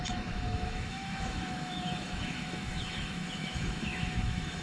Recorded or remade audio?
remade